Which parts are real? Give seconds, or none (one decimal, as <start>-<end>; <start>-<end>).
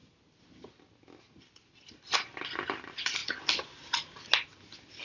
0.0-5.0